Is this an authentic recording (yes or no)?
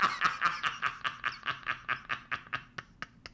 yes